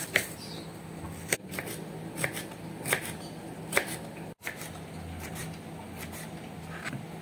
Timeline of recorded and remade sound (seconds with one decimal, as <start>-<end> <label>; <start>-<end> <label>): 0.0-7.2 recorded

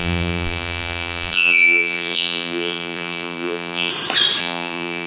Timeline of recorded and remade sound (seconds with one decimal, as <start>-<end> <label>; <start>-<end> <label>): 0.0-3.9 remade; 3.9-4.4 recorded; 4.4-5.1 remade

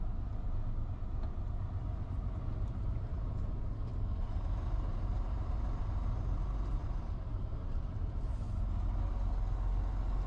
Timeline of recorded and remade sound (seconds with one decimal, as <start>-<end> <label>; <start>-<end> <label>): 0.0-2.5 recorded; 2.5-5.8 remade; 5.8-6.8 recorded; 6.8-7.5 remade; 7.5-10.3 recorded

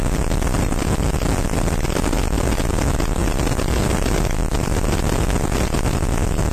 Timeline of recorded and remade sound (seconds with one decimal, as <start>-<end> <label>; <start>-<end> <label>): 0.0-6.5 recorded

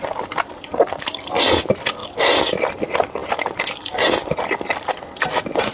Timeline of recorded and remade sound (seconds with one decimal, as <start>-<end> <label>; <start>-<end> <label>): 0.0-2.0 recorded; 2.0-2.7 remade; 2.7-5.7 recorded